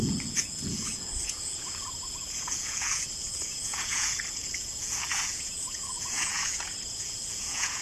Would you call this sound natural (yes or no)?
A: no